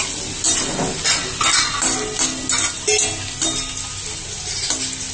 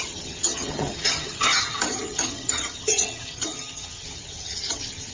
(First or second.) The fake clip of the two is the second